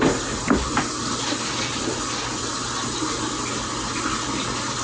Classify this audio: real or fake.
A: real